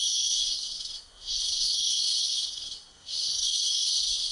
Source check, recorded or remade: remade